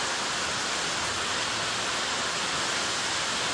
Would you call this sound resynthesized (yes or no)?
no